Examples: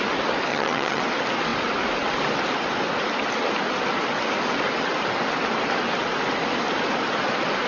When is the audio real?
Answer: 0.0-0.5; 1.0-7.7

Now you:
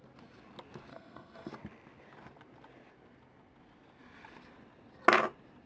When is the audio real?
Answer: 0.0-0.9; 1.5-5.7

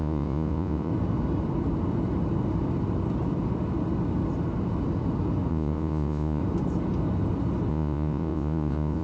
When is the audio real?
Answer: 0.9-5.5; 6.4-7.7

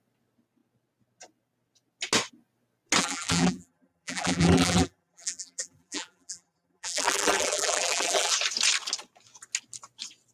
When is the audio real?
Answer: 0.0-3.0; 8.3-10.3